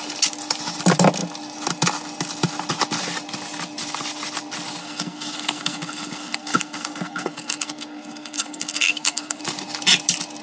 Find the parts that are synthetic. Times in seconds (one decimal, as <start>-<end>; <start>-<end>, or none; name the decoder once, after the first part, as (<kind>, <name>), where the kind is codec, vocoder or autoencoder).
4.8-9.4 (codec, SNAC)